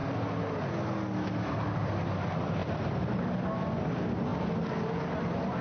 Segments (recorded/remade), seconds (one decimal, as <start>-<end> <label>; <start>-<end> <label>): 0.0-5.6 recorded